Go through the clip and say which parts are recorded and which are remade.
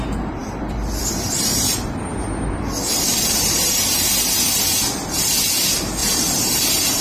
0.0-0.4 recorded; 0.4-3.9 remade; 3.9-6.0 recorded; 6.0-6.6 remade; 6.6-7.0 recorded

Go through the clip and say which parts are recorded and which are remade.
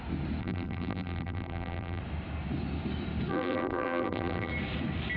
0.0-0.4 recorded; 0.4-2.0 remade; 2.0-3.3 recorded; 3.3-4.5 remade; 4.5-5.2 recorded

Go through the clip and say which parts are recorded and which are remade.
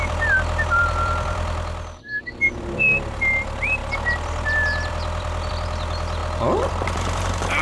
0.0-6.2 remade; 6.2-6.7 recorded; 6.7-7.6 remade